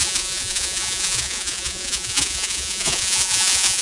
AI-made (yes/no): yes